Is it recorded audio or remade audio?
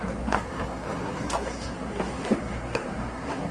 remade